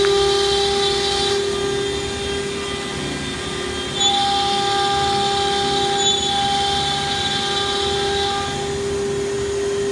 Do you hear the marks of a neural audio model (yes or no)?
no